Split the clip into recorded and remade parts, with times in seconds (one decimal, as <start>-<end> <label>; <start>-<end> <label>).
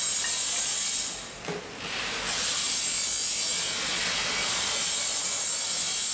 0.0-6.1 recorded